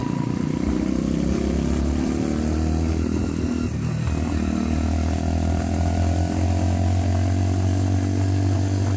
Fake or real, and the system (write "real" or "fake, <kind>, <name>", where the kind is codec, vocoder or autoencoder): real